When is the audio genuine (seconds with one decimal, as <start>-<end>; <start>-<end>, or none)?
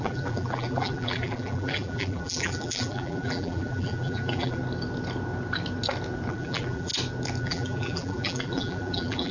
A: 4.6-6.3; 6.9-7.4